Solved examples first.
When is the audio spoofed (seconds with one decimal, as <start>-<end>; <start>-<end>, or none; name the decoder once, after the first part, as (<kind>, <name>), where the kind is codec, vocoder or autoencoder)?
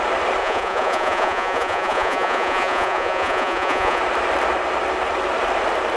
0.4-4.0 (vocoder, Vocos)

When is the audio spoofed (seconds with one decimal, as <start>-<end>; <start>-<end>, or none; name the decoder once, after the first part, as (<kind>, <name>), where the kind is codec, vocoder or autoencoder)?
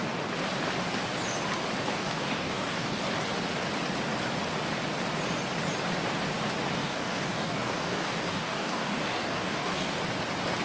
1.9-3.0 (codec, DAC); 6.8-10.0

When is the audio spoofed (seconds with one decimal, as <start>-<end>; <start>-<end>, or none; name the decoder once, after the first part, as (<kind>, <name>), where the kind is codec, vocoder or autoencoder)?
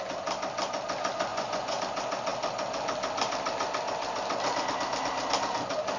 1.3-1.8 (vocoder, Vocos)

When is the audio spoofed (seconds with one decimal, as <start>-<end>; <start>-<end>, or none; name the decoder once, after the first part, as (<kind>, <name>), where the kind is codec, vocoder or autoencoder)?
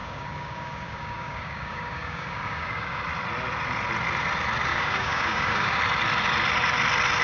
0.0-3.0 (codec, DAC); 4.7-5.8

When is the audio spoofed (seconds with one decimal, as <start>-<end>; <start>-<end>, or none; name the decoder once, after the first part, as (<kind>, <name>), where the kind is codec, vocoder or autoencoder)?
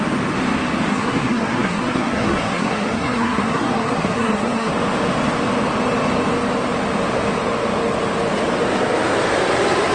0.9-4.7 (codec, SNAC)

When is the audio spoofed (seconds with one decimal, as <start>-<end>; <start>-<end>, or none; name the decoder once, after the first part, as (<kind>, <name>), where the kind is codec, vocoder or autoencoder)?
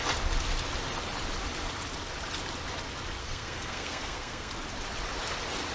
3.2-4.5 (codec, SNAC)